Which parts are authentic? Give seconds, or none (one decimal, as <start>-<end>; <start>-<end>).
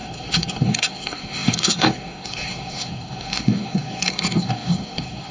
none